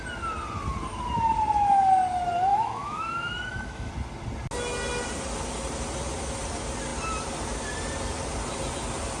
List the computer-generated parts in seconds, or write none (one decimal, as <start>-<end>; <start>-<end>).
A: 2.5-3.9